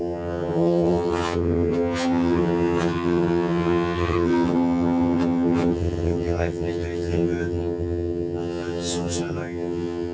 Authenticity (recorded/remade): remade